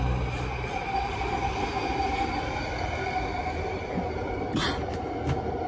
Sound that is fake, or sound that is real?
real